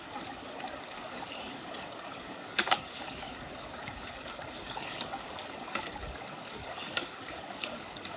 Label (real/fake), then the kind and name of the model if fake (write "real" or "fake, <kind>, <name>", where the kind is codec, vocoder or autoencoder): fake, codec, DAC